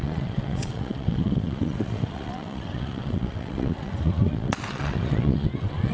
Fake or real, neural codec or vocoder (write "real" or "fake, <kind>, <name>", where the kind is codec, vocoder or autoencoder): fake, vocoder, WaveNeXt